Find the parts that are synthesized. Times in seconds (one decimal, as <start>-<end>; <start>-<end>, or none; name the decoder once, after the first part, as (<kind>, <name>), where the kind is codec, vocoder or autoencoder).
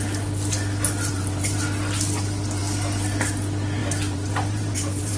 1.1-1.6 (vocoder, BigVGAN v2); 3.8-5.2